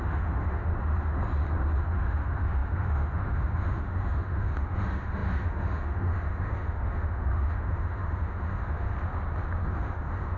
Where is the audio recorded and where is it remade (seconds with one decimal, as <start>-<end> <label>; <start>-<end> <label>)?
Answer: 0.0-0.7 remade; 0.7-1.8 recorded; 1.8-8.9 remade; 8.9-9.7 recorded; 9.7-10.4 remade